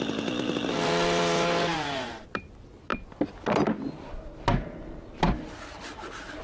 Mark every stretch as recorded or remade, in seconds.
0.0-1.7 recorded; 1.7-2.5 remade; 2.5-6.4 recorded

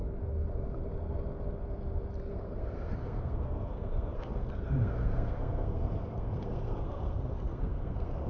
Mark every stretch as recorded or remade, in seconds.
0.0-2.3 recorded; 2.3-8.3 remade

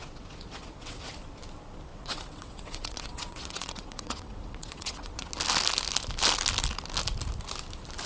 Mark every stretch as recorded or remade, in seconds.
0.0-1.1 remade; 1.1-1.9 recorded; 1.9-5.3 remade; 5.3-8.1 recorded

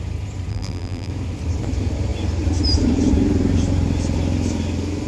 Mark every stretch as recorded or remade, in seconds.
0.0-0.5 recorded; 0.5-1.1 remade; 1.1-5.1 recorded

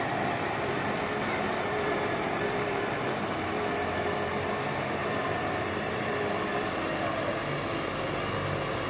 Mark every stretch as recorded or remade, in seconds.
0.0-1.2 recorded; 1.2-3.6 remade; 3.6-5.0 recorded; 5.0-6.2 remade; 6.2-8.9 recorded

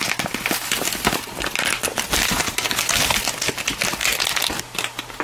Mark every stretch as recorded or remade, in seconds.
0.0-5.2 recorded